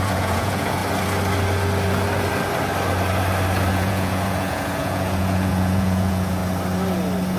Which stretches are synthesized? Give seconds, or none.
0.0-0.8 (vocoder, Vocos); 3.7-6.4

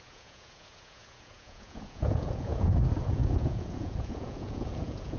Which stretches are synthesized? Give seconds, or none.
0.0-5.2 (vocoder, Vocos)

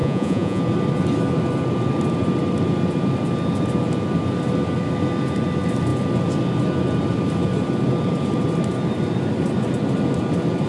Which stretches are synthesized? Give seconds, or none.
0.0-0.6 (vocoder, Vocos)

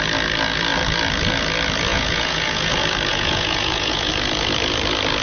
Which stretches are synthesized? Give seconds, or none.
1.9-2.7 (vocoder, Vocos); 3.1-4.1

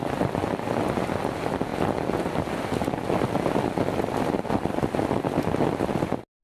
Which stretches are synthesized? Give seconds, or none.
none

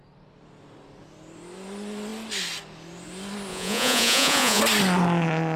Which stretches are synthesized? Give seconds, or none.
3.5-4.6 (vocoder, Vocos)

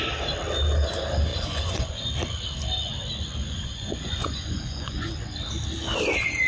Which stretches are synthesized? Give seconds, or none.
1.3-2.0 (vocoder, Vocos); 3.4-5.1